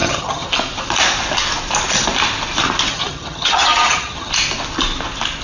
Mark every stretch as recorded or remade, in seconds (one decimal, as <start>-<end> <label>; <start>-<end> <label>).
0.0-0.5 remade; 0.5-2.9 recorded; 2.9-4.3 remade; 4.3-5.4 recorded